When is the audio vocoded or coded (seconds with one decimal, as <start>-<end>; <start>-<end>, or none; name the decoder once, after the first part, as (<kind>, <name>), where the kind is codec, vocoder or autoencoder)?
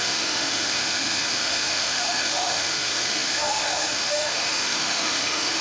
0.0-5.6 (autoencoder, DAC-VAE)